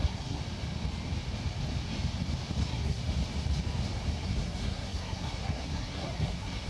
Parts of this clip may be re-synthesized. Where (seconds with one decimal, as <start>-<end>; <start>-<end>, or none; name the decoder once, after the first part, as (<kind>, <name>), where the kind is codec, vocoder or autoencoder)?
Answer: 0.0-0.4 (codec, SNAC); 2.6-3.0; 4.1-6.7